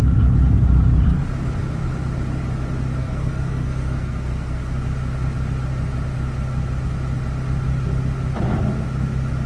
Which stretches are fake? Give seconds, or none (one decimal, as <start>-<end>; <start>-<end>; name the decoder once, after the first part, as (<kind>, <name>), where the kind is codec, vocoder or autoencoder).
3.0-4.6 (codec, SNAC)